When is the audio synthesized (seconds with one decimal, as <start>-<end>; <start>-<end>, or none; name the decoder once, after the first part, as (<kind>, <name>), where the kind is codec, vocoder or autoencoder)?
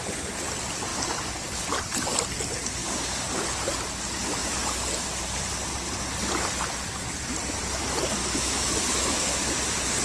8.2-9.5 (autoencoder, DAC-VAE)